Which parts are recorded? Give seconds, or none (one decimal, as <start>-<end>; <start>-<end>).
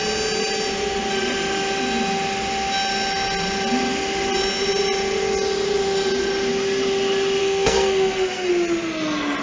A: 0.0-7.4; 8.5-9.4